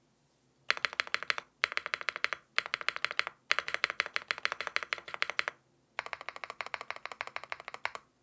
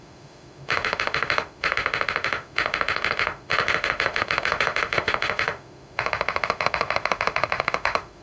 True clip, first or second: first